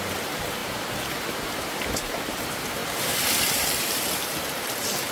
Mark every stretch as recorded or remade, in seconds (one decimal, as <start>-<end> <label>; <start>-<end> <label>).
0.0-2.8 remade; 2.8-3.4 recorded; 3.4-5.1 remade

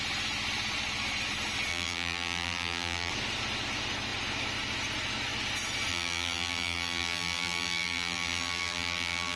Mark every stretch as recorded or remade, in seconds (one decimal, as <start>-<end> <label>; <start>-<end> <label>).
0.0-1.7 recorded; 1.7-3.1 remade; 3.1-5.9 recorded; 5.9-9.4 remade

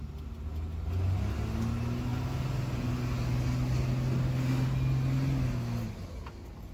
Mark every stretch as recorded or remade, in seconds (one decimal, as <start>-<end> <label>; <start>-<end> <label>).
0.0-6.7 recorded

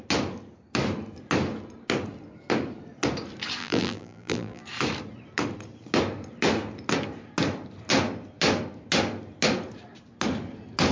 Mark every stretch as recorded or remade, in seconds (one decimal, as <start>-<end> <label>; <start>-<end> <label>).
0.0-3.6 recorded; 3.6-4.6 remade; 4.6-10.9 recorded

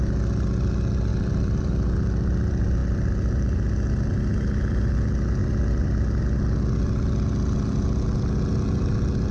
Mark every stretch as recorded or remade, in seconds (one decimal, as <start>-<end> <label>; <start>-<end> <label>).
0.0-1.1 recorded; 1.1-1.7 remade; 1.7-5.4 recorded; 5.4-6.2 remade; 6.2-9.3 recorded